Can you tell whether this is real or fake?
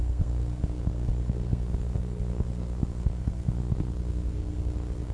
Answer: fake